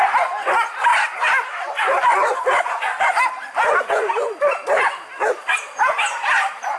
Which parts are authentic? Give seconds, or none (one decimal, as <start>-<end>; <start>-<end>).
0.0-6.8